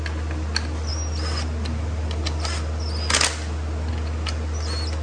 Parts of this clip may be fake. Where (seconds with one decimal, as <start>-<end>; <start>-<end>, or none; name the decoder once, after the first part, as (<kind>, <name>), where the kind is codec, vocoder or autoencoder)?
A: none